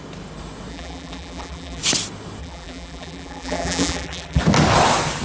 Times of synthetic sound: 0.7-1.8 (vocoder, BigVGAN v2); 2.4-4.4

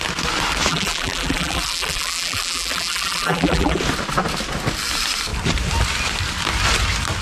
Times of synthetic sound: 0.7-3.8 (vocoder, BigVGAN v2)

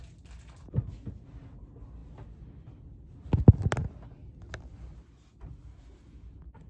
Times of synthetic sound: none

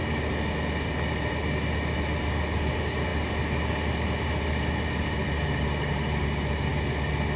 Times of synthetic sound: none